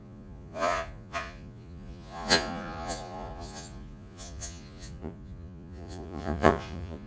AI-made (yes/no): yes